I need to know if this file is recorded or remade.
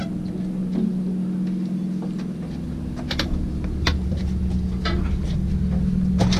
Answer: recorded